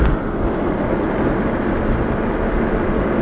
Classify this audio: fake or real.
real